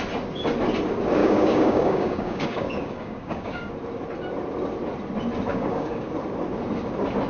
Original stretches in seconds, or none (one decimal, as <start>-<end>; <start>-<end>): 0.0-1.2; 3.7-5.5; 6.1-7.3